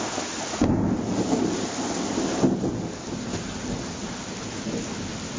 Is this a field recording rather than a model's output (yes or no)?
yes